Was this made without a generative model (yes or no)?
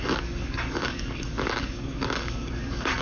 no